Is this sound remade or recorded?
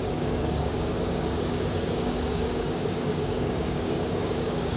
remade